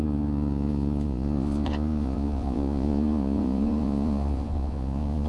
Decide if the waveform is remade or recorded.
remade